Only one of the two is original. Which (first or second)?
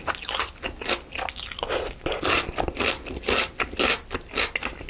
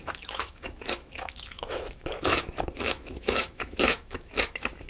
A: first